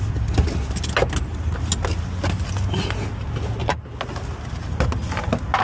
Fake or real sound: real